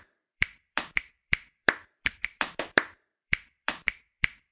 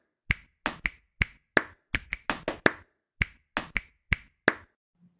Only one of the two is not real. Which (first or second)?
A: first